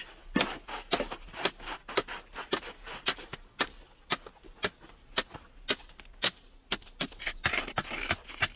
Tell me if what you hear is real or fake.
real